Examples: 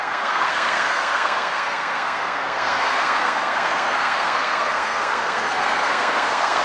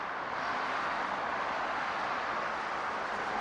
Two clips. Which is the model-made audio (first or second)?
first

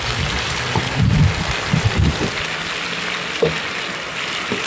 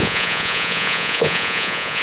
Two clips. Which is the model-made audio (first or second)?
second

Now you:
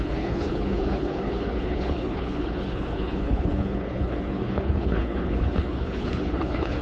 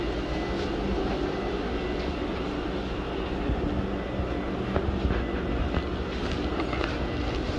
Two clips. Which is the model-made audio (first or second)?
first